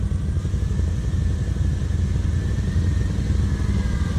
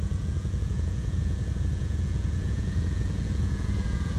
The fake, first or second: second